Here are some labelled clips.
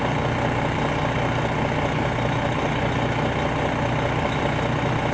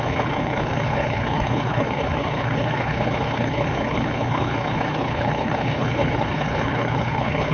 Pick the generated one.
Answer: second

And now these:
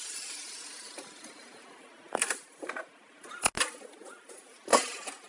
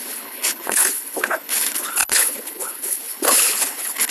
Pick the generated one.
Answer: second